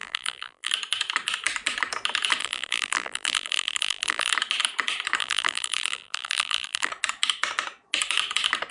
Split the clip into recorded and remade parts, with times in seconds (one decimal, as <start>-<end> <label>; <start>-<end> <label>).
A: 0.0-0.7 remade; 0.7-2.4 recorded; 2.4-4.3 remade; 4.3-5.2 recorded; 5.2-6.9 remade; 6.9-8.7 recorded